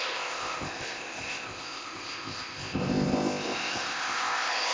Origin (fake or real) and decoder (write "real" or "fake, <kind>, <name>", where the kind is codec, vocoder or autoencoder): fake, codec, ZipCodec